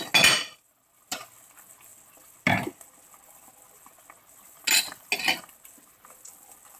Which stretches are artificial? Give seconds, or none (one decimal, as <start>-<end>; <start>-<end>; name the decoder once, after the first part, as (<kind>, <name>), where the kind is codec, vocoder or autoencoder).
none